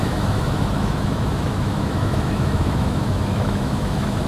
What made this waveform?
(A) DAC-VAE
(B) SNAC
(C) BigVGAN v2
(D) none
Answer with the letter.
A